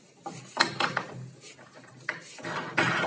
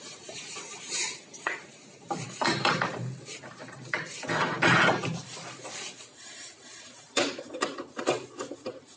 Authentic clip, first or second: first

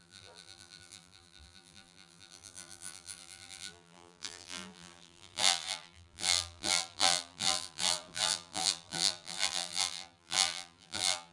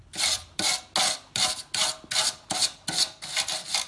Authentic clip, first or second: second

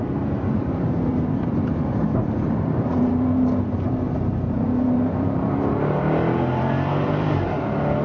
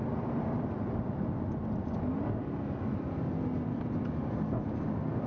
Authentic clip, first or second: second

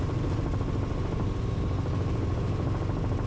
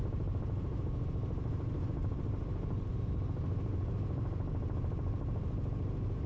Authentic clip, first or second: first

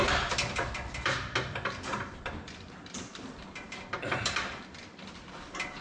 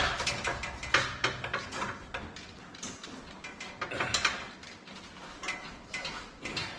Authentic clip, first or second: second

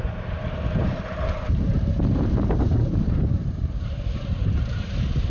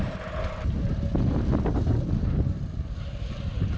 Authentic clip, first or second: second